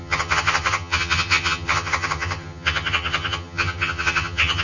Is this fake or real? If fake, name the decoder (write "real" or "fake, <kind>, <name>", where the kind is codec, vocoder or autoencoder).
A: fake, vocoder, HiFi-GAN